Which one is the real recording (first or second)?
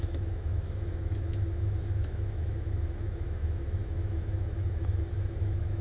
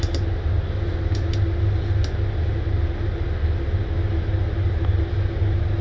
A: second